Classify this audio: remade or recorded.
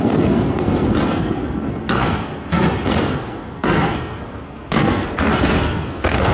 remade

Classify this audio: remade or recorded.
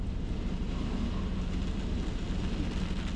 recorded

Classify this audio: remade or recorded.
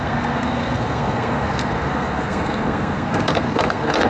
remade